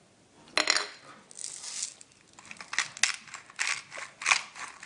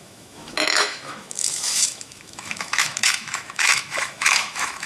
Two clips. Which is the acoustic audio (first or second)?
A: first